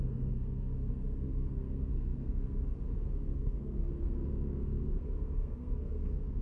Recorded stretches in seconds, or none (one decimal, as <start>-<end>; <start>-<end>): none